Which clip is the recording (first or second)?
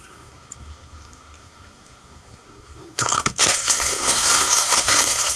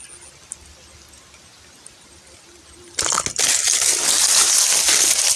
second